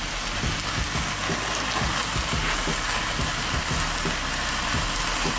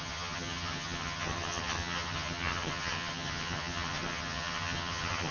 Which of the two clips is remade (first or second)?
second